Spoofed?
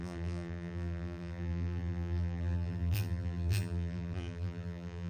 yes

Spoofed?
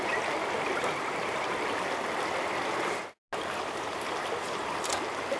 no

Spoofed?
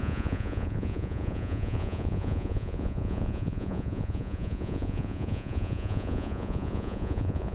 yes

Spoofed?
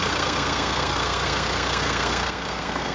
yes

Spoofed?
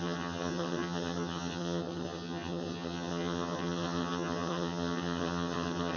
yes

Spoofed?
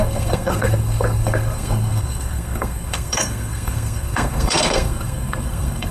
yes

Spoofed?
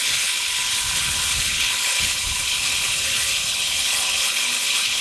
yes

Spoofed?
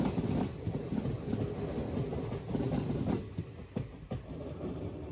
no